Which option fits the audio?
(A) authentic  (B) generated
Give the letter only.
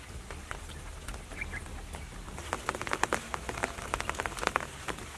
A